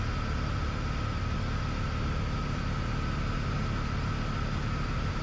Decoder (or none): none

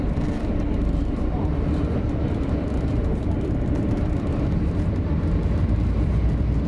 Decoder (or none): vocoder, BigVGAN v2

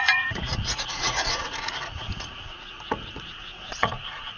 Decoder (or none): vocoder, Vocos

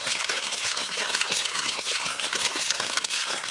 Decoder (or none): codec, SNAC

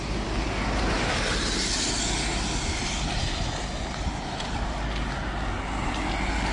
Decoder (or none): none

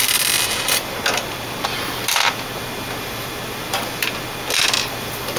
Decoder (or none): vocoder, BigVGAN v2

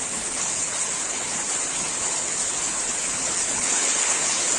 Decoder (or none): codec, HILCodec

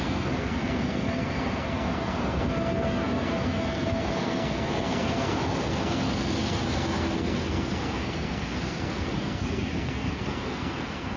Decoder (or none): codec, SNAC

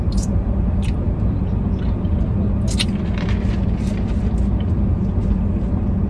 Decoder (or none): none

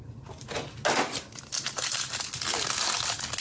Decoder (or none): none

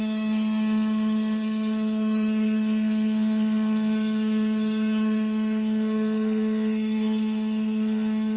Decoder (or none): codec, SNAC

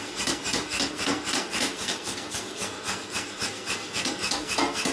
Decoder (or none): codec, SNAC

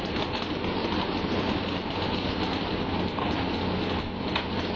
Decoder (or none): none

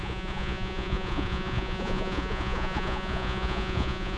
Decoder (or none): vocoder, Vocos